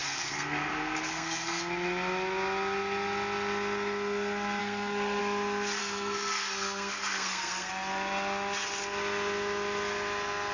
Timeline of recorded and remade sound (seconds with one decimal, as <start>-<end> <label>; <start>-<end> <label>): 0.0-1.6 remade; 1.6-4.6 recorded; 4.6-5.2 remade; 5.2-5.8 recorded; 5.8-7.7 remade; 7.7-10.5 recorded